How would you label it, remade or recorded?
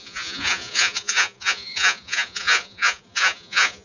remade